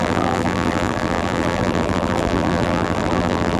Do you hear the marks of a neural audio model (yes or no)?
yes